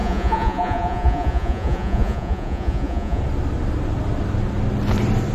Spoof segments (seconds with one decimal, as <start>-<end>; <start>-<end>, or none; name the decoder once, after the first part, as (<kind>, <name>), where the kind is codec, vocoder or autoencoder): 0.0-3.2 (vocoder, Vocos)